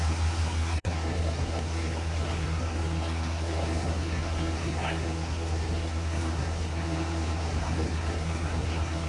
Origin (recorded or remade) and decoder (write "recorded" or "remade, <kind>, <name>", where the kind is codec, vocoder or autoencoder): remade, codec, SNAC